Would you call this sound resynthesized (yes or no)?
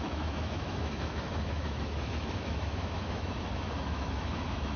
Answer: yes